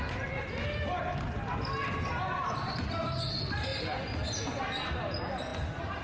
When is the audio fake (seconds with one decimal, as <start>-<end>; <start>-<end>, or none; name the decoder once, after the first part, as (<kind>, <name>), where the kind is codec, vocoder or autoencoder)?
none